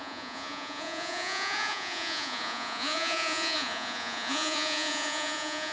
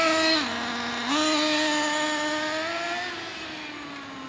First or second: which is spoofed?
first